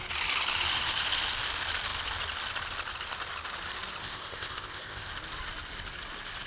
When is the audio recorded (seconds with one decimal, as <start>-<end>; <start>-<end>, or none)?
0.0-4.0; 5.1-6.5